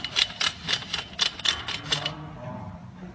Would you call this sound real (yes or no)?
yes